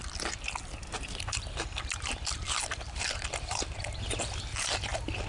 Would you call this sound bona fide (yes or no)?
yes